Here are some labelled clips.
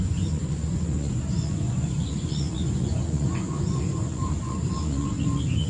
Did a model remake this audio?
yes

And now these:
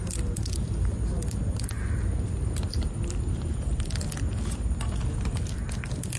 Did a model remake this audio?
no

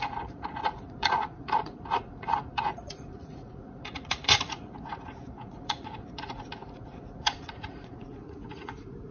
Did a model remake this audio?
yes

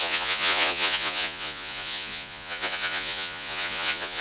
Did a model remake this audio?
yes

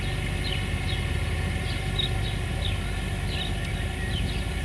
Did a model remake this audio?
no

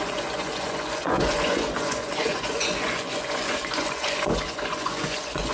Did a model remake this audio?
yes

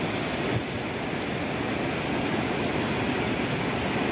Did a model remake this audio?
no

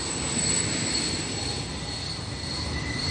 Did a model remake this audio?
no